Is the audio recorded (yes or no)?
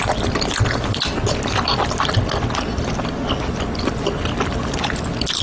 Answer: yes